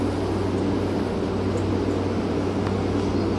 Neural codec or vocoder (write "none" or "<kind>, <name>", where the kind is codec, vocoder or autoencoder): none